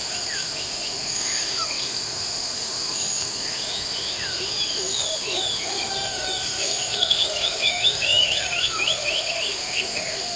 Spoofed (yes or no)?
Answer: yes